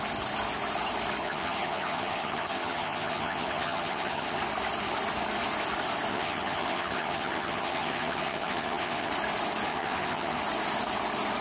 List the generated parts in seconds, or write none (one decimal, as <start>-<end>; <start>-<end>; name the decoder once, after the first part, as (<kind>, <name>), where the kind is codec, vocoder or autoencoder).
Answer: 1.2-4.4 (vocoder, HiFi-GAN); 6.1-9.1; 9.7-10.4

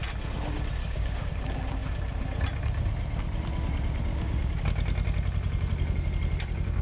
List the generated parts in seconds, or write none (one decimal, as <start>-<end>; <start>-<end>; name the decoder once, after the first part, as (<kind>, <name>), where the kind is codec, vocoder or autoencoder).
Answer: 0.8-1.3 (codec, DAC); 4.1-4.6

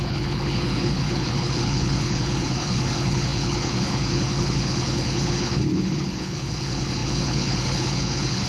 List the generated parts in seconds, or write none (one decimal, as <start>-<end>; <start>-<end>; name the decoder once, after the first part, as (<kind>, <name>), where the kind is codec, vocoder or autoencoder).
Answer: 0.0-8.5 (codec, HILCodec)

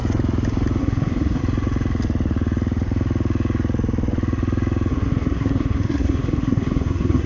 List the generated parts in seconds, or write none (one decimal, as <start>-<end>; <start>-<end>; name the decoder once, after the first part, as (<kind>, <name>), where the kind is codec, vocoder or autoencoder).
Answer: 0.8-1.4 (codec, SNAC); 4.9-7.3

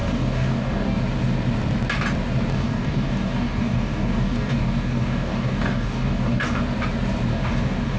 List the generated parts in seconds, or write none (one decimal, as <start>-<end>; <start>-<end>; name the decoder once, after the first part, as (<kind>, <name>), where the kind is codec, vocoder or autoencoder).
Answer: 0.0-1.0 (codec, DAC); 2.5-6.6; 7.3-8.0

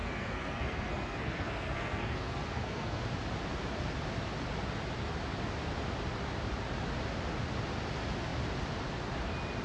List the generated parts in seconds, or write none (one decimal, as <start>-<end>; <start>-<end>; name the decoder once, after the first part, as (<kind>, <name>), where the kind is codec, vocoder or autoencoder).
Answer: 0.0-3.0 (codec, SNAC)

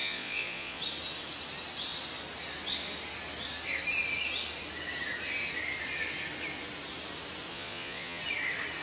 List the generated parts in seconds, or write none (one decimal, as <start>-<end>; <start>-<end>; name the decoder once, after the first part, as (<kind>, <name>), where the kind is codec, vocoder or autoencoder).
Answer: 0.0-0.8 (vocoder, Vocos); 7.5-8.2